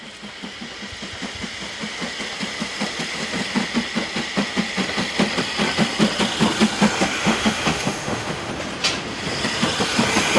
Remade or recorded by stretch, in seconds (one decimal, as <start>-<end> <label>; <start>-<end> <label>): 0.0-7.2 recorded; 7.2-8.5 remade; 8.5-10.4 recorded